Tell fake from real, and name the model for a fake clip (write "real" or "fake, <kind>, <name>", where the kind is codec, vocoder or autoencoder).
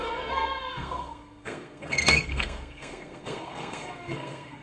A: fake, codec, SNAC